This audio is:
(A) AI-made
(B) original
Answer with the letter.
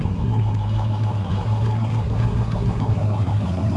A